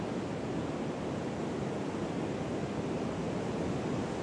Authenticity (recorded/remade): recorded